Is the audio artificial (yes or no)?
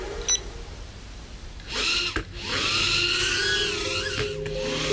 no